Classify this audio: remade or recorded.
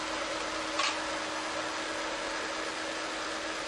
recorded